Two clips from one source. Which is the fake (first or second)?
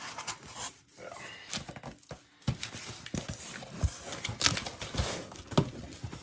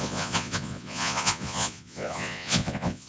second